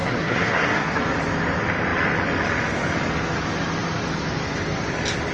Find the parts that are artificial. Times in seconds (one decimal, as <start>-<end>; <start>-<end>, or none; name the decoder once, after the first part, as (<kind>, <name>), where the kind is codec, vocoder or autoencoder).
0.0-1.0 (codec, SNAC)